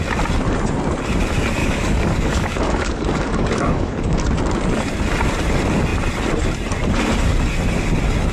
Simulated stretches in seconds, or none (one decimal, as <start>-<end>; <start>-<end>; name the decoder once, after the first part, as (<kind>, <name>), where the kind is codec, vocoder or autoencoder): 1.6-4.2 (codec, DAC)